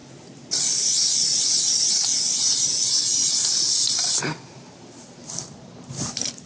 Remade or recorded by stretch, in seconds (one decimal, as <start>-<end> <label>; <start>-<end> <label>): 0.0-6.5 recorded